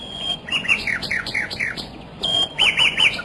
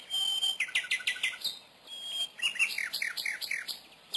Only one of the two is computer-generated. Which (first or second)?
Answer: first